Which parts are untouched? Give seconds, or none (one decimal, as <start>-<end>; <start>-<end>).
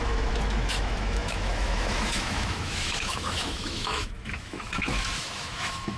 none